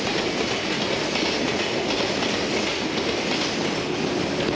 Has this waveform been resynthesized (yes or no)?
no